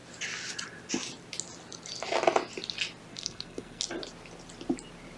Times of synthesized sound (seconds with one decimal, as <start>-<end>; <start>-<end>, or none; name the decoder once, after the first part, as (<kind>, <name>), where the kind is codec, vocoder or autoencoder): 3.1-3.8 (codec, SNAC)